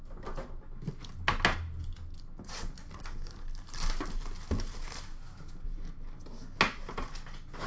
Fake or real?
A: real